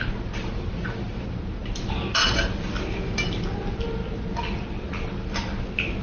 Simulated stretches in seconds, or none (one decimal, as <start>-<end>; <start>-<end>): none